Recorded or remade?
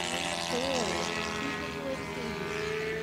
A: recorded